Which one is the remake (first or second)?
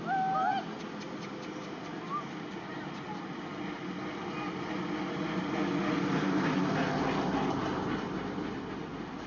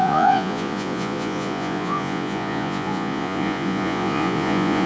second